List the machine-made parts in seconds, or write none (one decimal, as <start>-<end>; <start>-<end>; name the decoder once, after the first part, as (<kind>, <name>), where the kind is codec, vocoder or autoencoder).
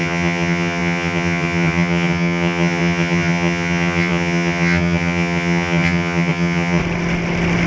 0.0-6.8 (vocoder, HiFi-GAN)